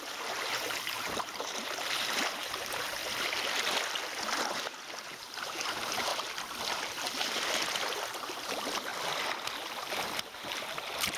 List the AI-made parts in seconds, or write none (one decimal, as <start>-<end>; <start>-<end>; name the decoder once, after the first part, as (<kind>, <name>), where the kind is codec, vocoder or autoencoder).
0.0-3.0 (vocoder, BigVGAN v2); 4.5-6.1; 7.1-8.9; 10.0-11.2